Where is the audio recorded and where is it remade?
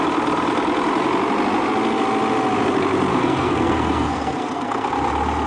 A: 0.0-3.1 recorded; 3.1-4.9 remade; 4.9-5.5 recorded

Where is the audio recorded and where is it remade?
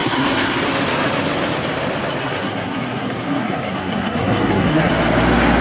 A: 0.0-0.6 remade; 0.6-2.2 recorded; 2.2-4.9 remade; 4.9-5.6 recorded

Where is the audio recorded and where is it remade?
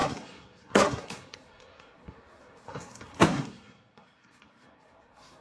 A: 0.0-5.4 remade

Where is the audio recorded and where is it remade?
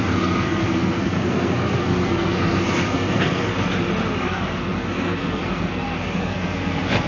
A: 0.0-3.5 remade; 3.5-4.2 recorded; 4.2-7.1 remade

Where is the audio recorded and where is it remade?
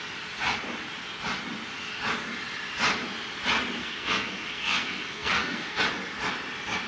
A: 0.0-3.8 recorded; 3.8-5.8 remade; 5.8-6.9 recorded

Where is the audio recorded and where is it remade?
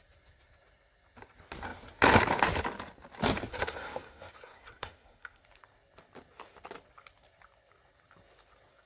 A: 0.0-3.5 recorded; 3.5-5.4 remade; 5.4-8.9 recorded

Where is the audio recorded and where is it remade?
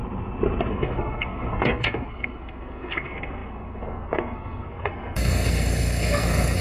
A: 0.0-0.7 recorded; 0.7-6.6 remade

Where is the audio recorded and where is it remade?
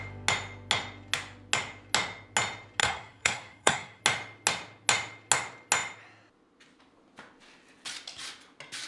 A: 0.0-2.8 recorded; 2.8-4.0 remade; 4.0-8.9 recorded